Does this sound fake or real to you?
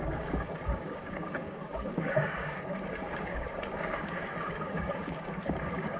fake